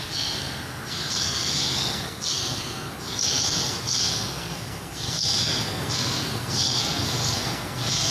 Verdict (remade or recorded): remade